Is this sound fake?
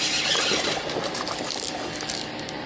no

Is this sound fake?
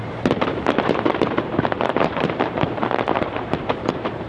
yes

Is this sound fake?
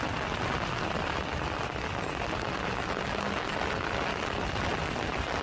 no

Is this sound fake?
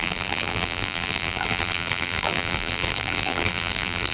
yes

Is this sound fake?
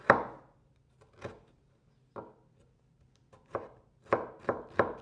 no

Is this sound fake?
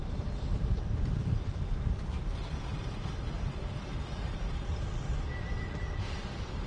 yes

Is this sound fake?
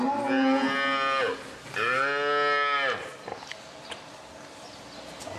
no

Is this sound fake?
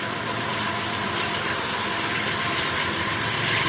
yes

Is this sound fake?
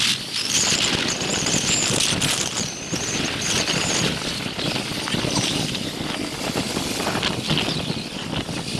no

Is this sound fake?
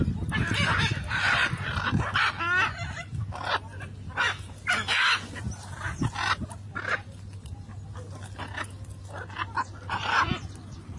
no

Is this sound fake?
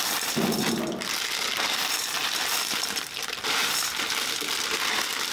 no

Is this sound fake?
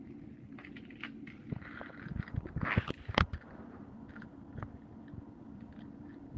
no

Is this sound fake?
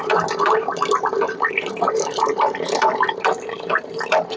yes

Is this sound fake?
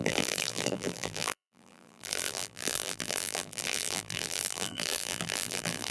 yes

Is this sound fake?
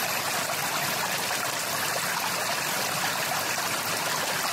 no